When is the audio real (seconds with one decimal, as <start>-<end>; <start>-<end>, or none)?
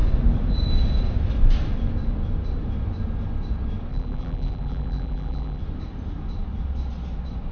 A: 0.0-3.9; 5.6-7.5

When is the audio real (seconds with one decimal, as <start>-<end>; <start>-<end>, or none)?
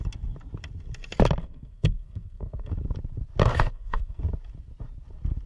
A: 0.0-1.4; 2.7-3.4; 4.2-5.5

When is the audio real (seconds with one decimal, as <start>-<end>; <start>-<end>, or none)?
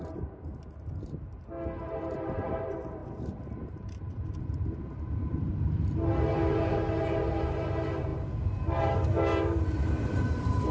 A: 0.5-1.0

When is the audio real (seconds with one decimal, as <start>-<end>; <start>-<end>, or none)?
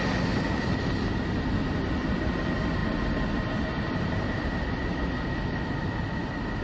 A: 0.0-6.6